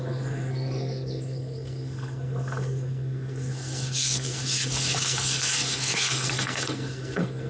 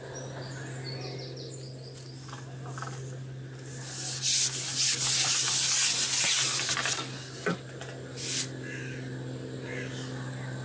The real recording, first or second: second